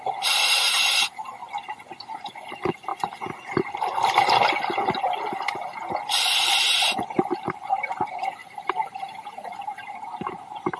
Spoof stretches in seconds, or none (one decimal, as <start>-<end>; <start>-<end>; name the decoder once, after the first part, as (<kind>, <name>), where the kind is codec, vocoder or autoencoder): 0.0-1.4 (vocoder, BigVGAN v2); 2.1-2.9; 6.4-10.8